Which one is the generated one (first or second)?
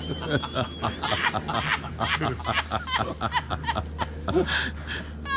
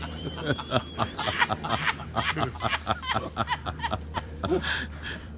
second